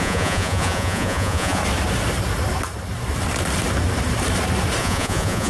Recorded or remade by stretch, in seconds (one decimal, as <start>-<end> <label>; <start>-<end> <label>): 0.0-1.6 remade; 1.6-4.8 recorded; 4.8-5.5 remade